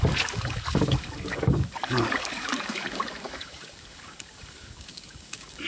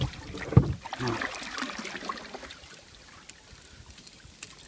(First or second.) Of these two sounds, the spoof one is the first